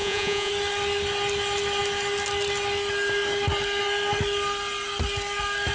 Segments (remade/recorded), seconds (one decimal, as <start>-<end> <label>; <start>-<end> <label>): 0.0-0.5 remade; 0.5-5.7 recorded